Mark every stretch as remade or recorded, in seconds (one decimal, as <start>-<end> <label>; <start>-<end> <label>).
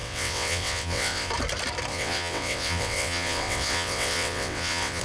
0.0-1.3 remade; 1.3-1.9 recorded; 1.9-5.0 remade